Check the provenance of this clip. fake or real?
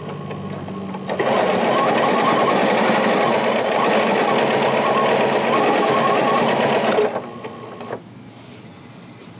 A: real